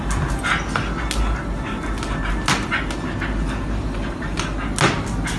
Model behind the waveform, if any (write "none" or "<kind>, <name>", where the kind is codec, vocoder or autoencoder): none